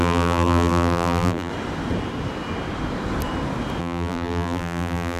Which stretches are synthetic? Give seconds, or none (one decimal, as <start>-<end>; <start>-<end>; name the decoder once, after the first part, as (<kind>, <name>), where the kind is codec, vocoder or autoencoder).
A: 0.0-1.5 (vocoder, BigVGAN v2); 3.8-5.2